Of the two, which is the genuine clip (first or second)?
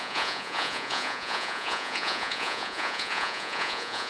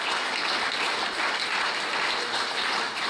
second